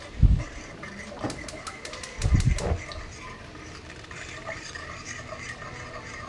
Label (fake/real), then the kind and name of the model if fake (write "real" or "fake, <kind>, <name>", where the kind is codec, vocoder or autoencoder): real